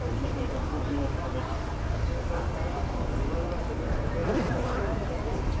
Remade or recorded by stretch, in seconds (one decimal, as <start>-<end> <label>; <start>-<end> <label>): 0.0-5.6 recorded